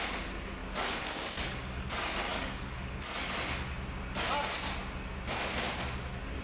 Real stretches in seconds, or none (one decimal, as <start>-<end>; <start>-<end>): 0.0-0.6; 1.9-2.3; 3.0-6.4